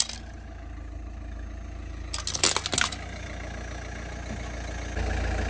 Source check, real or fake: real